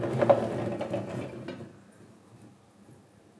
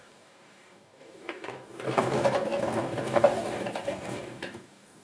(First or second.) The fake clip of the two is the second